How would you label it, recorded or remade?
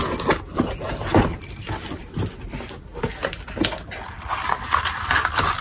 recorded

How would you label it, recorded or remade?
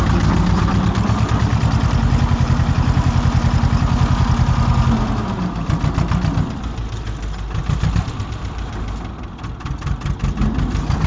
recorded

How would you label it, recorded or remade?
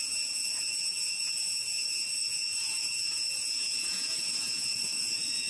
remade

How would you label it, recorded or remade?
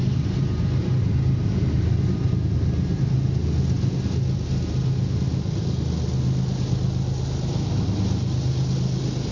recorded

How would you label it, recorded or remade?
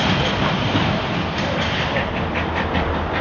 recorded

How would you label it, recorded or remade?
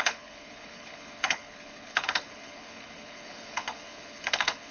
remade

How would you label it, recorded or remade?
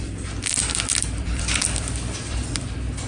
remade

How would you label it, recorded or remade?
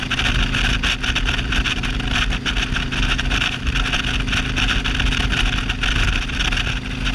recorded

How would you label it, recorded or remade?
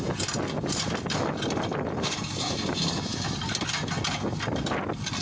recorded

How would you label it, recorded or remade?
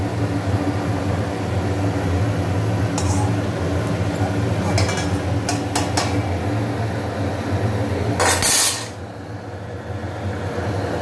recorded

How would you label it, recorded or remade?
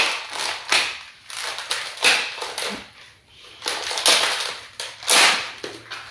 recorded